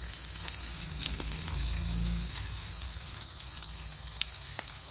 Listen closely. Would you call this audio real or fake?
fake